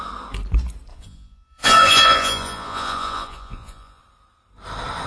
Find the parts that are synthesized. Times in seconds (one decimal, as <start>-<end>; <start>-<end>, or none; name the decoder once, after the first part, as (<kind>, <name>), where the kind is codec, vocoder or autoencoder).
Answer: 0.9-4.0 (vocoder, Vocos)

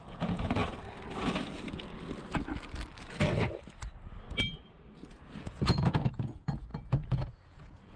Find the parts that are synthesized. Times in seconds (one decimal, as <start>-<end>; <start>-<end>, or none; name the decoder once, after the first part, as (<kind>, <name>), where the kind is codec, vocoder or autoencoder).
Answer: 0.0-0.6 (vocoder, Vocos); 5.4-8.0

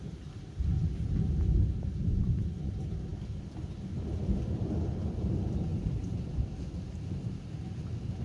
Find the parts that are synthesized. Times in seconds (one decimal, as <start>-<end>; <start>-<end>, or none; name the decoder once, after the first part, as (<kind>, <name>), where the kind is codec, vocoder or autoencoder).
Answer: 2.1-2.7 (vocoder, Vocos)

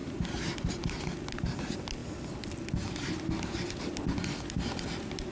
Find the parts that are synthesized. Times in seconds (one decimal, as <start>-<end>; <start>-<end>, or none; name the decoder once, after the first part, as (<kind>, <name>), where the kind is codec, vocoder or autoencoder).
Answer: none

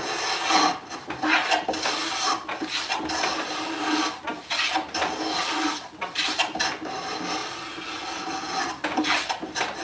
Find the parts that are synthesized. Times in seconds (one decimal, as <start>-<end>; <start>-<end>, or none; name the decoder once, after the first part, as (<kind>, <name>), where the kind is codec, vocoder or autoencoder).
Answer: none

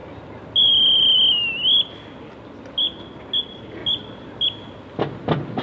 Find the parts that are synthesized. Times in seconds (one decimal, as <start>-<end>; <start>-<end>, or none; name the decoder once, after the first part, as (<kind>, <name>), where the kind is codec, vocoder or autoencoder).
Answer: 3.4-3.8 (vocoder, Vocos)

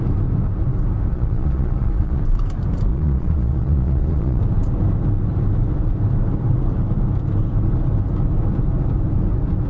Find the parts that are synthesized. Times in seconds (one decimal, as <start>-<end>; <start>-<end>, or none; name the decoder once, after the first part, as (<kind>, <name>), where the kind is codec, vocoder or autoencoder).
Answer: 1.1-2.2 (vocoder, Vocos); 2.9-4.4

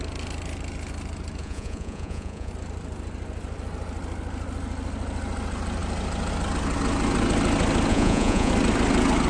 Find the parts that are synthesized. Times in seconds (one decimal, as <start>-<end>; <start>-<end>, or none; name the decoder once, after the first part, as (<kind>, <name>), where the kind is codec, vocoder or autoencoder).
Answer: 1.4-2.5 (vocoder, Vocos); 7.9-8.5